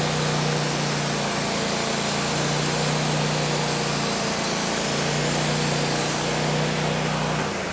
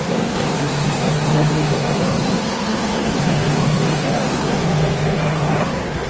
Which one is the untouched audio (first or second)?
first